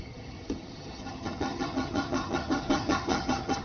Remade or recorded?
remade